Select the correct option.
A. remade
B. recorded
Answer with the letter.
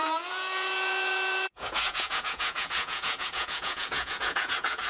A